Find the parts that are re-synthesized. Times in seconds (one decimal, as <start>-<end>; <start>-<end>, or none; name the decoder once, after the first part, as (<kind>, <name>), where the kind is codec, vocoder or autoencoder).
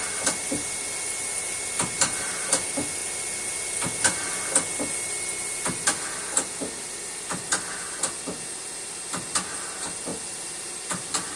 10.1-11.4 (vocoder, BigVGAN v2)